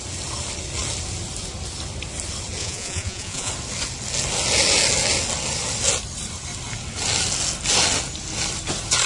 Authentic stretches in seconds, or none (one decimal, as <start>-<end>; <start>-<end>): 0.0-2.6; 3.5-9.1